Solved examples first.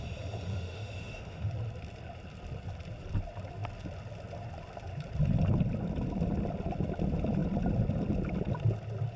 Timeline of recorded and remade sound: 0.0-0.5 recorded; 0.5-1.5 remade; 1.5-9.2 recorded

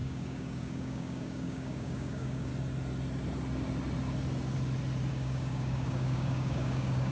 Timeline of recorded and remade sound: 0.0-2.5 remade; 2.5-5.1 recorded; 5.1-7.1 remade

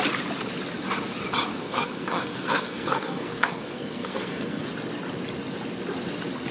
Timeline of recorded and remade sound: 0.0-1.5 recorded; 1.5-4.6 remade; 4.6-6.5 recorded